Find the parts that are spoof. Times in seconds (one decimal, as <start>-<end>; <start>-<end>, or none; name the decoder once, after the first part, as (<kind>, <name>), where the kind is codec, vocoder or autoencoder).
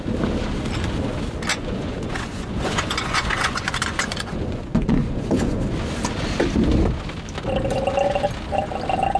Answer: 1.5-5.6 (vocoder, Vocos)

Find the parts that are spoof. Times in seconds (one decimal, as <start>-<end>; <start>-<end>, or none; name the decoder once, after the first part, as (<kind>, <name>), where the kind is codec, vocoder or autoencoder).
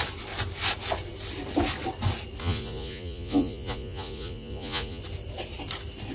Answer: 2.4-5.0 (vocoder, Vocos)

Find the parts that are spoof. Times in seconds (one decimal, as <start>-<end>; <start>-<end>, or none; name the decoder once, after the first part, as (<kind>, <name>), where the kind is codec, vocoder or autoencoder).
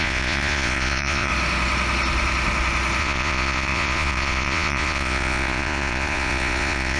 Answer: 0.0-1.3 (vocoder, Vocos); 3.0-7.0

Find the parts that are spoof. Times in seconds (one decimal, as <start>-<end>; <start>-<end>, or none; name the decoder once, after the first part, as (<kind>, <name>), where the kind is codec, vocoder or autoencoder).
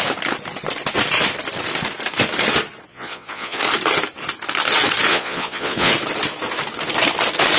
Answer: 2.9-3.6 (vocoder, Vocos); 5.1-5.9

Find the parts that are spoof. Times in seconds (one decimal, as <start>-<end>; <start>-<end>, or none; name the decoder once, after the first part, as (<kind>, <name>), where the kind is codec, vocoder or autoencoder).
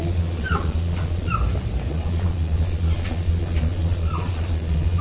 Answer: 0.0-1.3 (vocoder, Vocos); 1.9-5.0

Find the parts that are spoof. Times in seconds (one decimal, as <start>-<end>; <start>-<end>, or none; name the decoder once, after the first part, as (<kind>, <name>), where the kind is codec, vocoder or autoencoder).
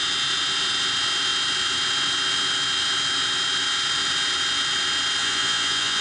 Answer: 5.2-6.0 (vocoder, Vocos)